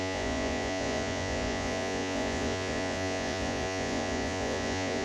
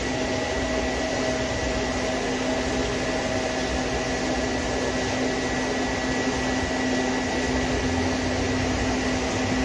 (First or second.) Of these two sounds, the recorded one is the second